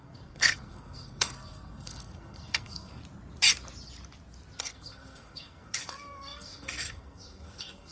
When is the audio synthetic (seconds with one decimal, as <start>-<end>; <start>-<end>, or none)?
0.0-3.0; 4.6-7.9